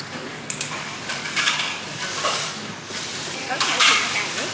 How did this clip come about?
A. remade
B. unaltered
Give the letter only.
A